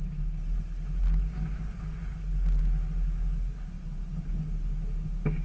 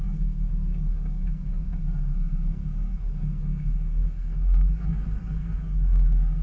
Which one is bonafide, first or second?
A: first